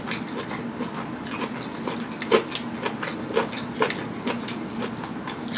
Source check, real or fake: real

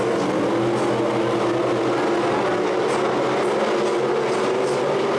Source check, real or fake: real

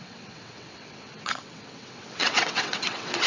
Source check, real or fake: fake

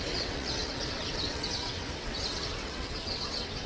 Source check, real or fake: fake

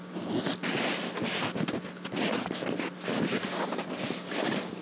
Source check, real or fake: real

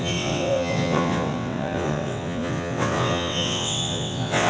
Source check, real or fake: fake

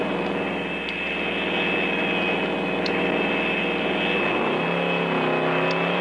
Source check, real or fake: real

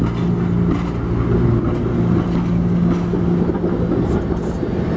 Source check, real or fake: real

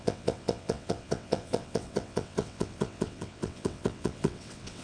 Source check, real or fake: fake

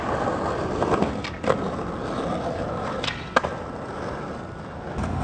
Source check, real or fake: real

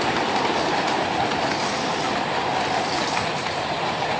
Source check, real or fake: real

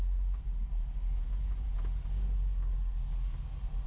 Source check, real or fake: real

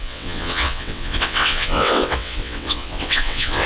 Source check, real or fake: fake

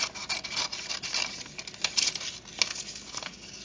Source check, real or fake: real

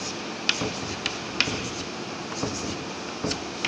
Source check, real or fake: real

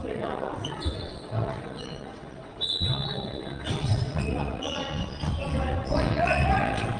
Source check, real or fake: fake